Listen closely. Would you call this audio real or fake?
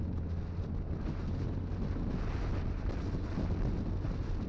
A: real